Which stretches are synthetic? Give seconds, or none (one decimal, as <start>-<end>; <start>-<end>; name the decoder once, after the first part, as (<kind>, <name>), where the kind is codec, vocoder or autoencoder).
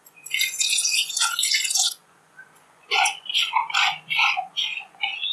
0.0-5.3 (vocoder, Vocos)